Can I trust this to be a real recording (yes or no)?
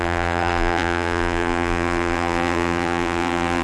no